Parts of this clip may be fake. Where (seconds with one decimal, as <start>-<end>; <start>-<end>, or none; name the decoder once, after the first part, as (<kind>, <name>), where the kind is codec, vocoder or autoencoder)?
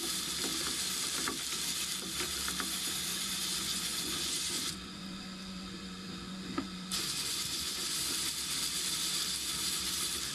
3.1-8.1 (vocoder, Vocos)